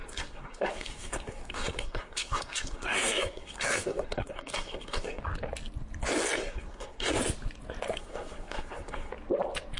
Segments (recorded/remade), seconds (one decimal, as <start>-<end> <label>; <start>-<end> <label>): 0.0-5.2 remade; 5.2-6.4 recorded; 6.4-7.2 remade; 7.2-7.9 recorded; 7.9-9.1 remade; 9.1-9.8 recorded

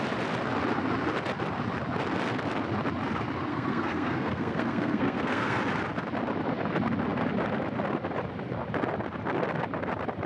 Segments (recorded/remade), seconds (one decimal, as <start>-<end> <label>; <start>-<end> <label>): 0.0-3.5 recorded; 3.5-5.6 remade; 5.6-10.3 recorded

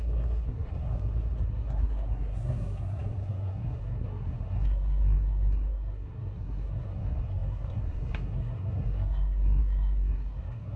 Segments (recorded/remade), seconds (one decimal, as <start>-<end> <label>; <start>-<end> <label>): 0.0-10.8 remade

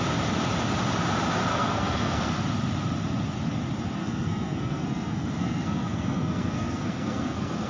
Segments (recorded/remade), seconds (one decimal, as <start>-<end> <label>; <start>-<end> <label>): 0.0-1.5 recorded; 1.5-2.3 remade; 2.3-4.0 recorded; 4.0-7.7 remade

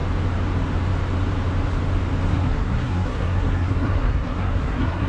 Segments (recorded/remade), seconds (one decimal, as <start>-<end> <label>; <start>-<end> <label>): 0.0-2.3 recorded; 2.3-5.1 remade